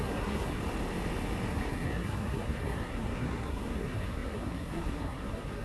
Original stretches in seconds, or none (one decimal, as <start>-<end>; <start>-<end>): 0.6-1.5